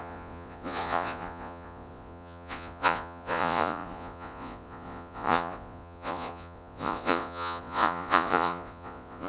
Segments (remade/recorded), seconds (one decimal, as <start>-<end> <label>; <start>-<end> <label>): 0.0-9.3 remade